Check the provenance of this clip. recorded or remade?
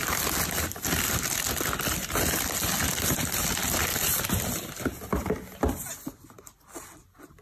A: recorded